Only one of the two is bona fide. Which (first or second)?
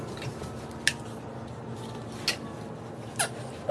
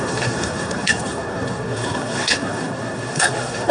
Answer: first